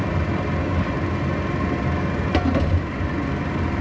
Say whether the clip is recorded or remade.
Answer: recorded